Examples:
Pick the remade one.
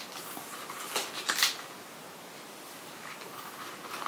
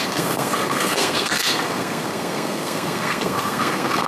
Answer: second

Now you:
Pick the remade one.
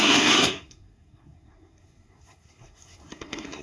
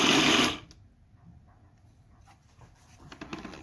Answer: first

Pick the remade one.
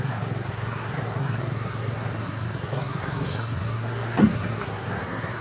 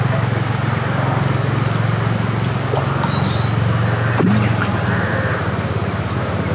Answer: first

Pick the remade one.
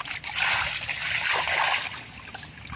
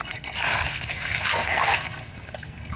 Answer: second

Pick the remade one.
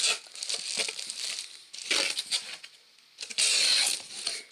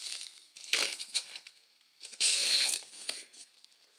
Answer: second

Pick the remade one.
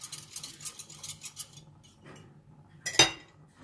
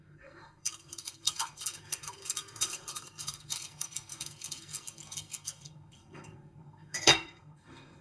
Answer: second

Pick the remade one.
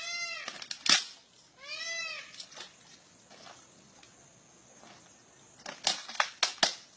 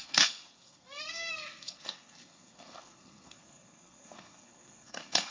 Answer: second